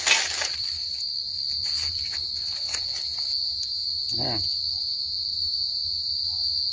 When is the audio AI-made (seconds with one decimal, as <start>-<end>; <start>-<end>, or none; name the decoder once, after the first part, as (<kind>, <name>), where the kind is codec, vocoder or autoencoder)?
none